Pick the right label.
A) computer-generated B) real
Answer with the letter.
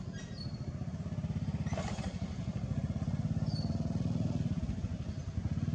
B